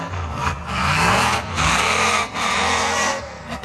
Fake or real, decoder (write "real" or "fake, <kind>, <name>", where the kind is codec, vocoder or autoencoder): fake, codec, SNAC